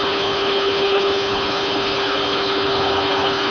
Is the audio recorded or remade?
remade